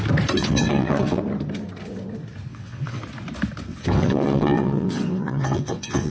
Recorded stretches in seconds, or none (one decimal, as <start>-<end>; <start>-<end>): 0.0-0.4; 1.2-2.5; 3.0-3.7